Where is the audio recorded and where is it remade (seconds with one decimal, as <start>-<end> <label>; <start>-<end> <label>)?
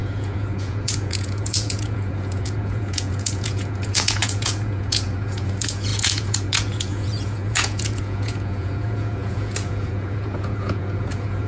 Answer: 0.0-11.5 remade